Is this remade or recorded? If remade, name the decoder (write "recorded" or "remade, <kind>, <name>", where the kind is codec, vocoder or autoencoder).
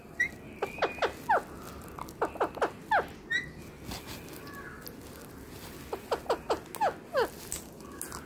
recorded